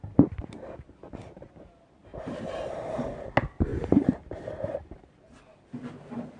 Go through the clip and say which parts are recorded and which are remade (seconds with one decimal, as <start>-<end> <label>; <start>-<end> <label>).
0.0-2.1 recorded; 2.1-2.7 remade; 2.7-3.7 recorded; 3.7-5.2 remade; 5.2-6.4 recorded